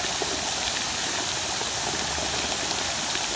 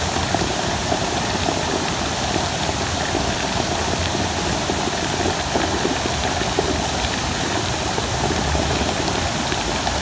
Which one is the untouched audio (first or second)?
first